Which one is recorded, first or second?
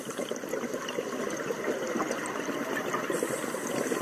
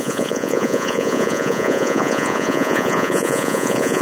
first